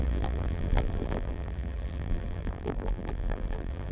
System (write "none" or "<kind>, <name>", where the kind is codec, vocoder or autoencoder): vocoder, BigVGAN v2